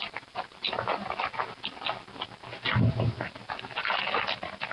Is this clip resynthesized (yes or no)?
no